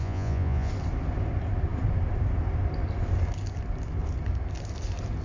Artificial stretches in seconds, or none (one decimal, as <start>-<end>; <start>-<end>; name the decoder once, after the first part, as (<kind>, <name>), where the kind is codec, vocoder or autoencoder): 0.0-0.7 (vocoder, Vocos)